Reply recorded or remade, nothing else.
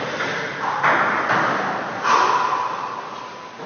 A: recorded